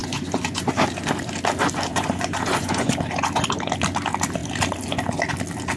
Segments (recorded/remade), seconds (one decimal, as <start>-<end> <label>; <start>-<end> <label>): 0.0-0.7 remade; 0.7-1.9 recorded; 1.9-2.9 remade; 2.9-5.8 recorded